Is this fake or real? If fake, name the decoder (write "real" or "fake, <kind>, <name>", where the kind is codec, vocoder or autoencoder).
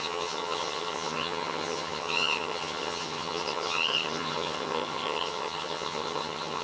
fake, vocoder, HiFi-GAN